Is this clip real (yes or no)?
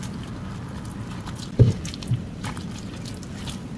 yes